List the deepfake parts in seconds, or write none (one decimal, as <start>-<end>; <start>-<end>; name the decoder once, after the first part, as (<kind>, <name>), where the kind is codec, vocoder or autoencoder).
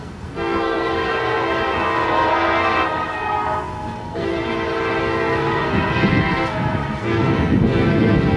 0.0-4.3 (codec, SNAC); 5.0-8.4